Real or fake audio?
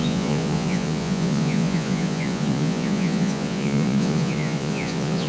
fake